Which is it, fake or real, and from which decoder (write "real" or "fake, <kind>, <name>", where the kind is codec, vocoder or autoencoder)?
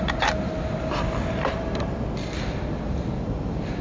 real